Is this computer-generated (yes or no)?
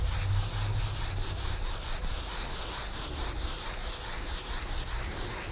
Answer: no